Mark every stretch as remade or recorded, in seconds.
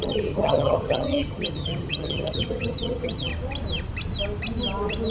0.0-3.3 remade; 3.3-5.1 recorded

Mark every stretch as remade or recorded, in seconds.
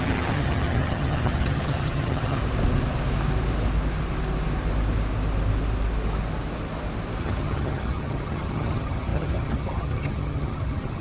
0.0-2.4 remade; 2.4-7.2 recorded; 7.2-11.0 remade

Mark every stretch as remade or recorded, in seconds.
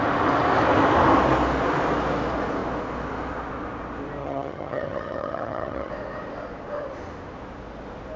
0.0-4.2 recorded; 4.2-5.9 remade; 5.9-8.2 recorded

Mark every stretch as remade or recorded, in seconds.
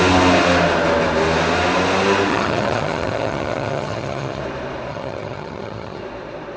0.0-2.3 recorded; 2.3-4.4 remade; 4.4-4.9 recorded; 4.9-6.0 remade; 6.0-6.6 recorded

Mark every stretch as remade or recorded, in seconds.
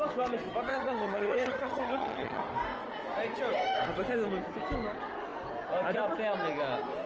0.0-0.7 recorded; 0.7-2.4 remade; 2.4-7.1 recorded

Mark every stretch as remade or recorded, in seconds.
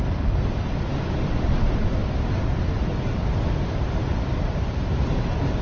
0.0-5.6 recorded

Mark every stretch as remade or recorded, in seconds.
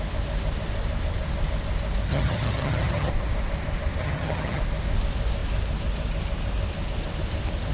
0.0-2.1 recorded; 2.1-3.1 remade; 3.1-4.0 recorded; 4.0-4.6 remade; 4.6-7.7 recorded